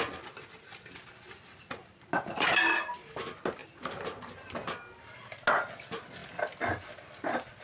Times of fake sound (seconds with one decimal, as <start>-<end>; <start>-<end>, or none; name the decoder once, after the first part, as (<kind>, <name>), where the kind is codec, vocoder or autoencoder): none